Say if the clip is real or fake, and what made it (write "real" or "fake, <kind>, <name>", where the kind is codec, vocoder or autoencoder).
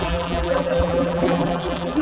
fake, vocoder, BigVGAN v2